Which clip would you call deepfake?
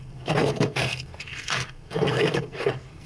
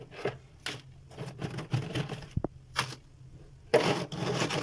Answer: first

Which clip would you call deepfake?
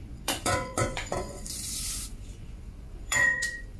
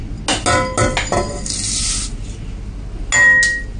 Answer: first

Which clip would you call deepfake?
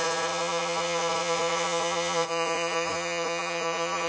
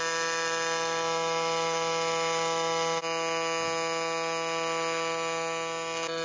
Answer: first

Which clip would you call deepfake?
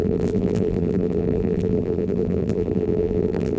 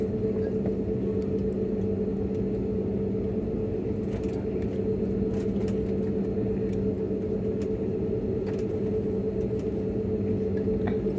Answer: first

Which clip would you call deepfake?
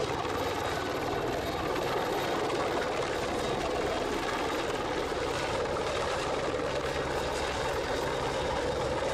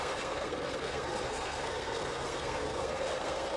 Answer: second